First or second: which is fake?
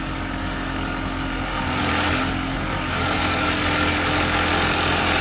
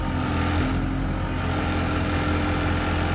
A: first